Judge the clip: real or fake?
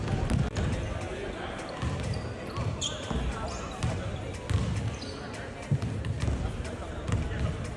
real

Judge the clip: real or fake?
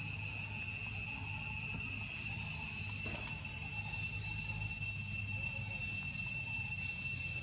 real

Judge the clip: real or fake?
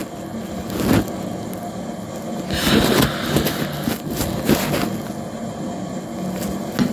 real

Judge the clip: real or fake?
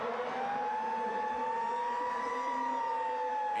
real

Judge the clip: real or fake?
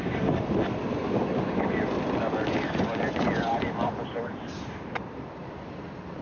fake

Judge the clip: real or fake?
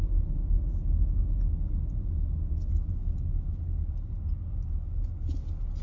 real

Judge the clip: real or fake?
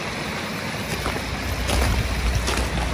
real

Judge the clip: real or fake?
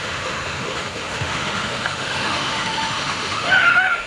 fake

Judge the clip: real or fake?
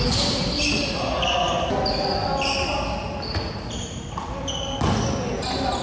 real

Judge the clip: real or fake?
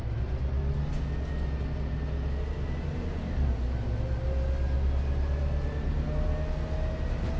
real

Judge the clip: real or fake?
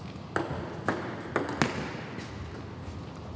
real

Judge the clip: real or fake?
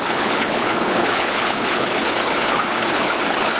fake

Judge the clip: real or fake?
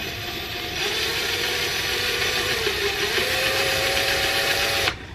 fake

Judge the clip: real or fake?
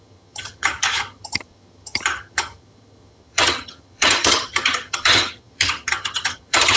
fake